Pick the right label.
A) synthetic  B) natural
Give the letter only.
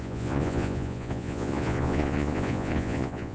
A